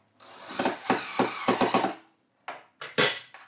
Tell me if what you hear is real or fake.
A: real